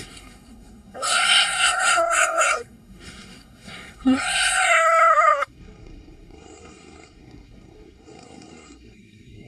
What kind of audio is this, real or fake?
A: fake